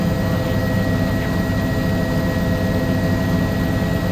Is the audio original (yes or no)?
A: yes